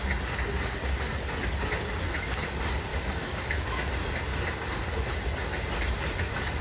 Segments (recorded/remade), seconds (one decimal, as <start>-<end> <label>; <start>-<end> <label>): 0.0-2.9 recorded; 2.9-3.9 remade; 3.9-6.6 recorded